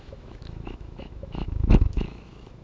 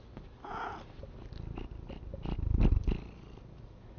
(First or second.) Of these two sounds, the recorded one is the second